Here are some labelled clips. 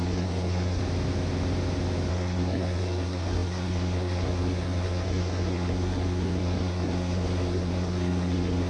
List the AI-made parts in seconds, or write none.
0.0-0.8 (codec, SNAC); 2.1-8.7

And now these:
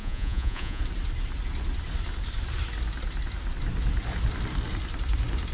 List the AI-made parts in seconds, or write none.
0.0-0.8 (vocoder, Vocos)